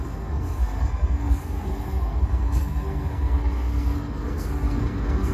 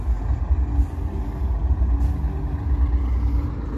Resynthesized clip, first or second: first